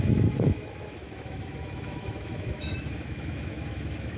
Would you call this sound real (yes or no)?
no